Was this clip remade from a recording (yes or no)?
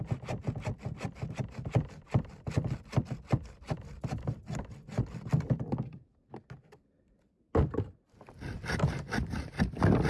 no